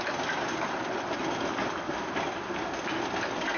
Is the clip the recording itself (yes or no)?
yes